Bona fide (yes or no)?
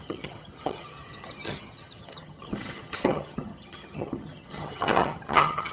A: no